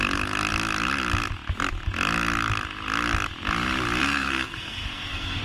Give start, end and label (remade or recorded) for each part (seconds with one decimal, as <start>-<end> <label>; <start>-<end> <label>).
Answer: 0.0-4.0 recorded; 4.0-5.4 remade